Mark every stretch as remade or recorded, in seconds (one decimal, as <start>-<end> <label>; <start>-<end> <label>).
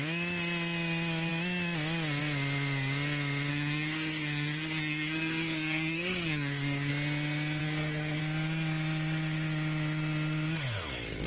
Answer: 0.0-3.5 recorded; 3.5-6.9 remade; 6.9-7.6 recorded; 7.6-8.2 remade; 8.2-11.3 recorded